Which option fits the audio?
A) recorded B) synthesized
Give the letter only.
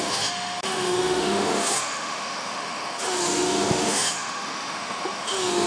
B